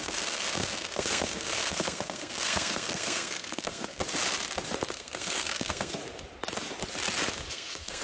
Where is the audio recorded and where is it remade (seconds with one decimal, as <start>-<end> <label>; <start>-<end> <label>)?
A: 0.0-4.0 remade; 4.0-4.9 recorded; 4.9-6.0 remade; 6.0-7.5 recorded; 7.5-8.0 remade

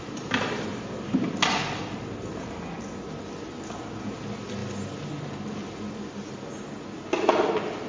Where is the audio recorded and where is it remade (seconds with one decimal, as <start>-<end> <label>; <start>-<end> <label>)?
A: 0.0-7.9 recorded